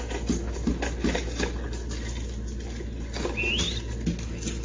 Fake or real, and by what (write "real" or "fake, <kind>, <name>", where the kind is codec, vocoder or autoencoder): real